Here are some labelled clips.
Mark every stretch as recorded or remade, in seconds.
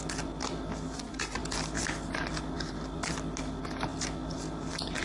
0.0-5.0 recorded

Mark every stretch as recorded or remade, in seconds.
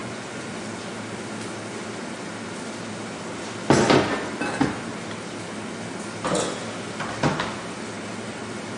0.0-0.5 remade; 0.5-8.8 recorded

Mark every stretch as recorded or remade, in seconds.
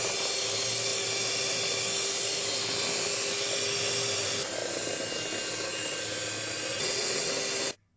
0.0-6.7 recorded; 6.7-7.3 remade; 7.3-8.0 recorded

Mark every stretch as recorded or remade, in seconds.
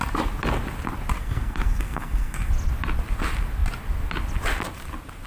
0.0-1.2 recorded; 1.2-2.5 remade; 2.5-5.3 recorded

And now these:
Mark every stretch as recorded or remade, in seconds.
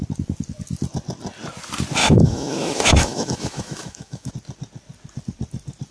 0.0-2.0 recorded; 2.0-4.3 remade; 4.3-5.9 recorded